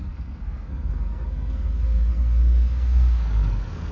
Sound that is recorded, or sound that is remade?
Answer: remade